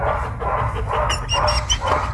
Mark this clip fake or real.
real